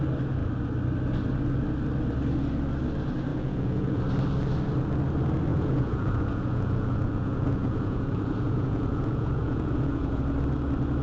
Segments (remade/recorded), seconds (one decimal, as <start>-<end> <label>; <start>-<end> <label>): 0.0-3.3 recorded; 3.3-4.0 remade; 4.0-5.5 recorded; 5.5-10.2 remade; 10.2-11.0 recorded